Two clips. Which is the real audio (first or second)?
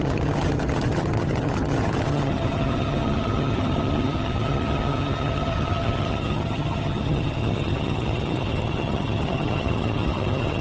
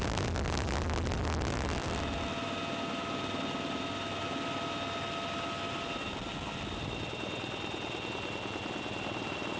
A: second